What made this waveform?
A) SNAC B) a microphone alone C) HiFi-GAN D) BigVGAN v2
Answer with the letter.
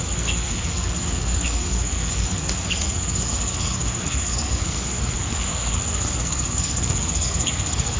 A